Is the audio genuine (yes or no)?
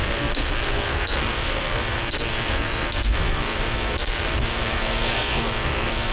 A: no